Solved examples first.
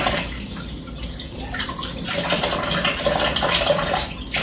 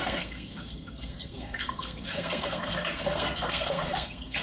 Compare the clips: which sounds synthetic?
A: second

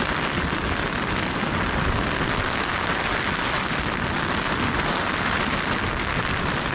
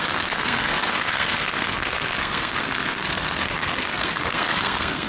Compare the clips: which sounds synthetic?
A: second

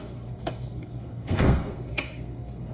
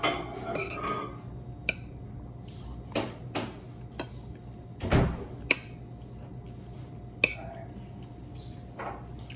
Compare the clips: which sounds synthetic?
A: first